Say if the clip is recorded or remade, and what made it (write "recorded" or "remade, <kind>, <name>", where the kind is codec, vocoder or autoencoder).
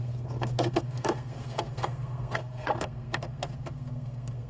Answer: remade, codec, SNAC